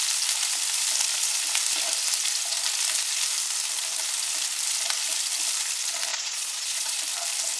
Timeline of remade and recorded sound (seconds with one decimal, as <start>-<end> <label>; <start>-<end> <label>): 0.0-6.1 recorded; 6.1-7.0 remade; 7.0-7.6 recorded